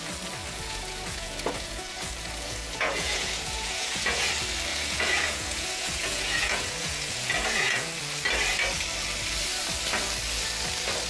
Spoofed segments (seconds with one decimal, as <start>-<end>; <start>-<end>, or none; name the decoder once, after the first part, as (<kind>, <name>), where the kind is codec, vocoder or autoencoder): 0.4-4.3 (vocoder, Vocos); 4.7-7.9